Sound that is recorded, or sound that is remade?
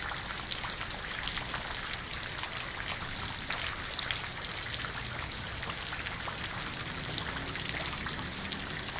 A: recorded